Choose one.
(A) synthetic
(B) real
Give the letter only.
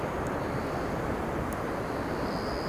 A